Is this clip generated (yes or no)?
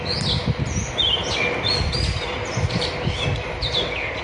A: no